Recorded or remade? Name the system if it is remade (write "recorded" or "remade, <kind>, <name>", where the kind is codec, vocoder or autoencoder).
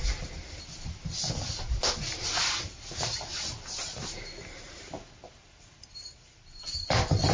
recorded